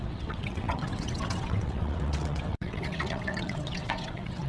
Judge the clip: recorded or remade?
remade